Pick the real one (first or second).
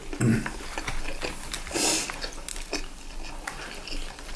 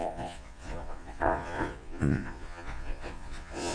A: first